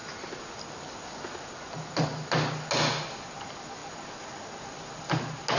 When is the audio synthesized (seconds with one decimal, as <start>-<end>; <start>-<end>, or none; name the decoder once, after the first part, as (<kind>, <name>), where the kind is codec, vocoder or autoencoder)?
3.8-4.4 (vocoder, BigVGAN v2)